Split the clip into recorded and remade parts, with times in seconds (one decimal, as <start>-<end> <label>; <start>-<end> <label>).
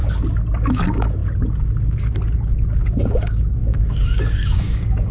0.0-0.6 recorded; 0.6-1.2 remade; 1.2-2.8 recorded; 2.8-5.1 remade